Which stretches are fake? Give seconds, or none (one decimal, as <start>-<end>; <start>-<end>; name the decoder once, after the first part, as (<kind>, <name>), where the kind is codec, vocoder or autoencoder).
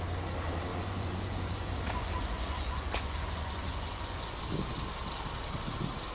0.7-4.4 (vocoder, Vocos)